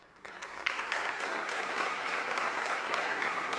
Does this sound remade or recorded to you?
remade